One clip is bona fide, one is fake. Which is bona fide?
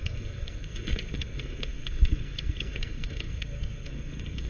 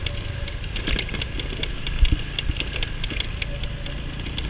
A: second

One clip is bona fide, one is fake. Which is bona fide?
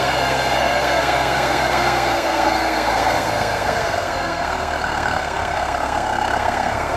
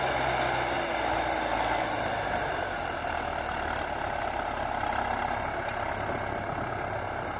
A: second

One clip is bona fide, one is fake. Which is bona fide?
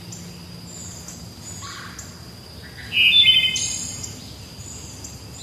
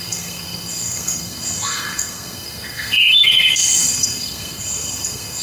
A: first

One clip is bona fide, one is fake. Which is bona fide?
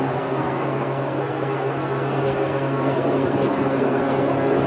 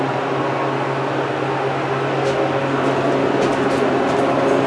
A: second